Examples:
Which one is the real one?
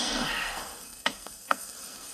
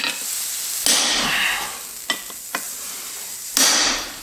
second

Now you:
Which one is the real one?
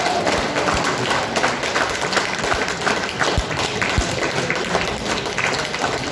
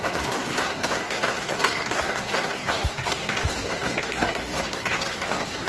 first